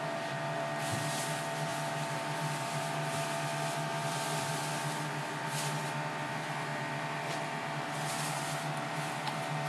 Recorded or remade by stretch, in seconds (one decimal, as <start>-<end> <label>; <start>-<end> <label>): 0.0-1.7 recorded; 1.7-4.6 remade; 4.6-9.7 recorded